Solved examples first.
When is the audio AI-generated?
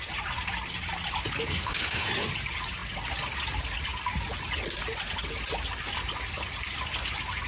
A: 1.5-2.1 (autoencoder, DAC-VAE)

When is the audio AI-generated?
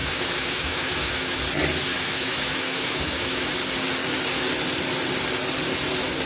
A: 0.0-1.4 (autoencoder, DAC-VAE); 1.9-3.5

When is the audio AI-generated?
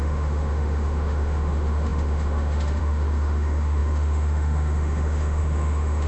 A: 0.0-6.1 (autoencoder, DAC-VAE)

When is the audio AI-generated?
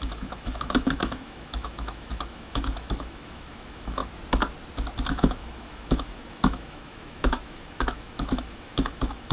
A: 0.0-4.0 (autoencoder, DAC-VAE); 5.1-9.3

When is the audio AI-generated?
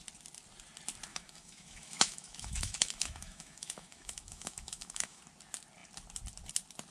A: 1.1-5.2 (autoencoder, DAC-VAE)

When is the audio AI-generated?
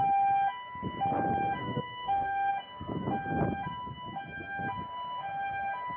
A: 1.6-2.5 (autoencoder, DAC-VAE)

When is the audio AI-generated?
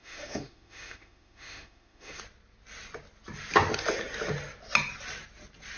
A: 0.0-2.2 (autoencoder, DAC-VAE)